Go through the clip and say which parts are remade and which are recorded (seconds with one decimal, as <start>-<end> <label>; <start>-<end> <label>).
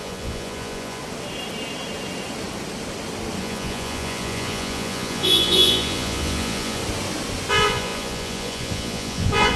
0.0-1.0 remade; 1.0-3.4 recorded; 3.4-6.8 remade; 6.8-7.5 recorded; 7.5-9.6 remade